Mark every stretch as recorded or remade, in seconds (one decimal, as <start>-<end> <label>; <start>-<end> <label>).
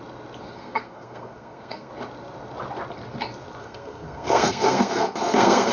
0.0-0.5 recorded; 0.5-1.9 remade; 1.9-3.6 recorded; 3.6-5.7 remade